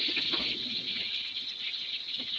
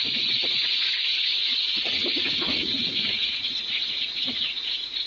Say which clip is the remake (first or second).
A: second